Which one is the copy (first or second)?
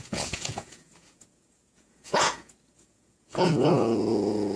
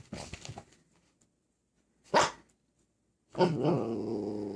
first